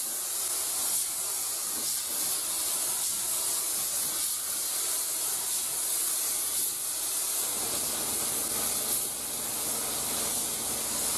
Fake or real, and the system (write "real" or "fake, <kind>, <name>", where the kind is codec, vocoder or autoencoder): real